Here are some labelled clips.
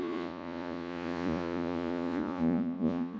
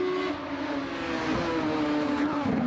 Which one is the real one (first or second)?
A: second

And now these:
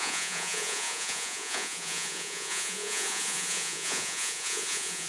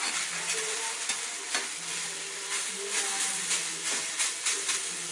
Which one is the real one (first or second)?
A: second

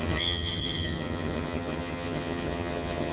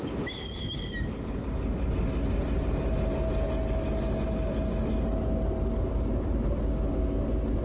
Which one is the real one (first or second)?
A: second